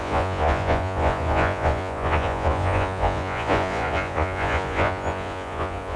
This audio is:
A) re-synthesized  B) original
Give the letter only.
A